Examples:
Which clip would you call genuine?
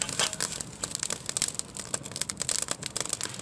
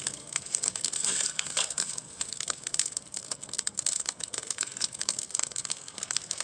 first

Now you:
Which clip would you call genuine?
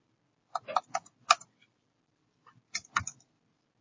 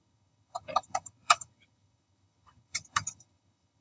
first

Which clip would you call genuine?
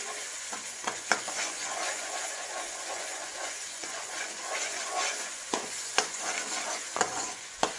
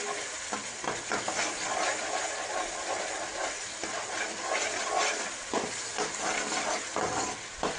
second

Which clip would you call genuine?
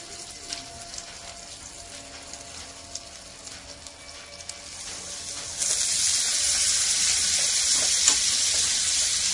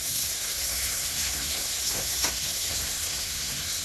first